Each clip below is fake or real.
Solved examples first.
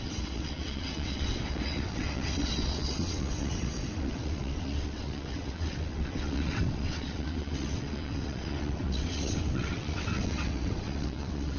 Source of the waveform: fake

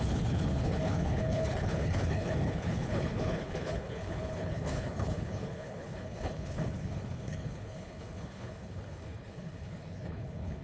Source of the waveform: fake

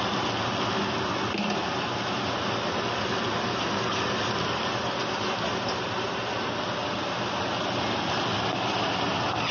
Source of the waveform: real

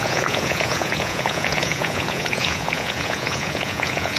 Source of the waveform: fake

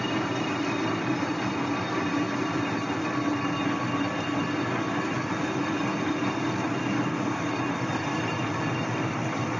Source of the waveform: real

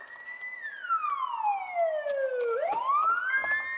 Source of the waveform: real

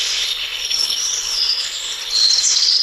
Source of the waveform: fake